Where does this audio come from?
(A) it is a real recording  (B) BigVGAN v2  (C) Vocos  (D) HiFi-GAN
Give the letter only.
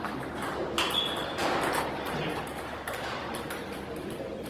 B